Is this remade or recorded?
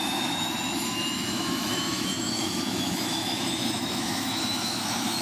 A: remade